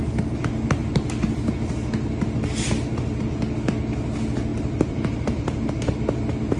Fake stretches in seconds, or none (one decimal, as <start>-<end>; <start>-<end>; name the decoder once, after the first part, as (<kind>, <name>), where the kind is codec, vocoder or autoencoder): 4.5-5.7 (vocoder, BigVGAN v2)